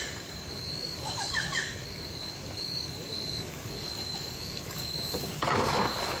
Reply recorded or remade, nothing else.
remade